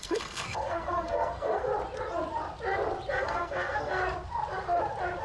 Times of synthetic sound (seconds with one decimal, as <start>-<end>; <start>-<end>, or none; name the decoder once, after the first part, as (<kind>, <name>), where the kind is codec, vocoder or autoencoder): 0.0-1.7 (codec, SNAC); 3.1-4.0